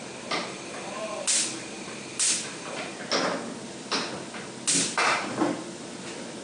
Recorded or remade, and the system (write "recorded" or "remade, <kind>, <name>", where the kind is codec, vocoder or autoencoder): recorded